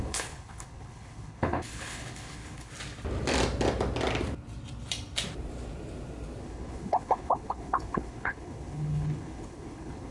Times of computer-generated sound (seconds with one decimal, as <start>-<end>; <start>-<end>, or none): 0.0-2.7; 6.4-10.1